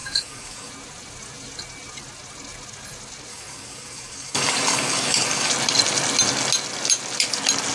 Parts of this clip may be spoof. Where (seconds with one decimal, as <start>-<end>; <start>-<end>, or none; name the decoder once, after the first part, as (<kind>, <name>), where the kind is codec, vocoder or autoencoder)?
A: 0.0-0.7 (codec, DAC); 3.3-5.5